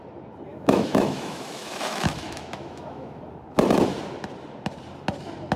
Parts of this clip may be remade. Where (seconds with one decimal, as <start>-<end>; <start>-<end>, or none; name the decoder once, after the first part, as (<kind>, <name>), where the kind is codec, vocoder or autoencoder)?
0.5-3.2 (autoencoder, DAC-VAE)